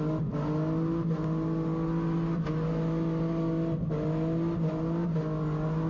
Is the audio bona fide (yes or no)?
yes